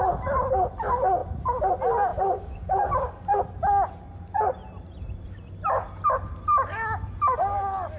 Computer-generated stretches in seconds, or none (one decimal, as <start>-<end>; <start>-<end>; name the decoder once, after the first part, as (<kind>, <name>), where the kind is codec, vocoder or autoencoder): 2.1-3.4 (codec, DAC)